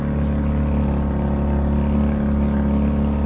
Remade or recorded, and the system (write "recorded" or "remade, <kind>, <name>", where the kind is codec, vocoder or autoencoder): recorded